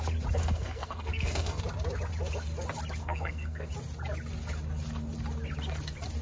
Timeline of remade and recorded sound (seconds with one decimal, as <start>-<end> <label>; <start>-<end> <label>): 0.0-0.4 recorded; 0.4-1.6 remade; 1.6-3.0 recorded; 3.0-3.7 remade; 3.7-6.2 recorded

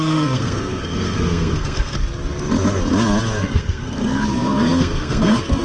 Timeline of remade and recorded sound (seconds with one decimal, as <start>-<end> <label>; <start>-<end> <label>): 0.0-2.0 remade; 2.0-3.4 recorded; 3.4-5.6 remade

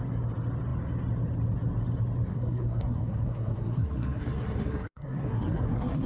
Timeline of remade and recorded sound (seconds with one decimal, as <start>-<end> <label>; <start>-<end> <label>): 0.0-2.3 recorded; 2.3-6.1 remade

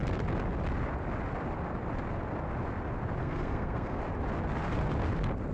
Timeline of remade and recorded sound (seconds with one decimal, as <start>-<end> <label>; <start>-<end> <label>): 0.0-3.2 recorded; 3.2-4.0 remade; 4.0-5.5 recorded

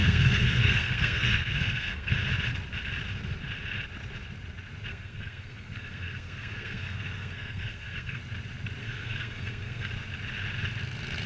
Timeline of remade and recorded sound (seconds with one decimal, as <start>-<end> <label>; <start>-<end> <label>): 0.0-2.1 remade; 2.1-4.9 recorded; 4.9-8.2 remade; 8.2-8.8 recorded; 8.8-9.9 remade; 9.9-11.3 recorded

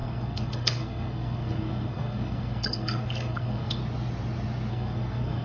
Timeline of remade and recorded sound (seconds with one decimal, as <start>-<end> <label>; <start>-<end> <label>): 0.0-3.8 remade; 3.8-4.7 recorded; 4.7-5.4 remade

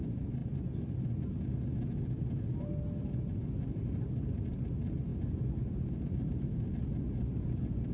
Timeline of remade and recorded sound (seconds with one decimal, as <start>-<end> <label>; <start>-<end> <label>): 0.0-7.9 recorded

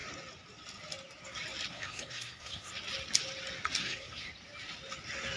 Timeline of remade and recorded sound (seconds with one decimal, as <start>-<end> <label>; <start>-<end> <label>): 0.0-1.7 recorded; 1.7-2.7 remade; 2.7-3.8 recorded; 3.8-4.3 remade; 4.3-5.4 recorded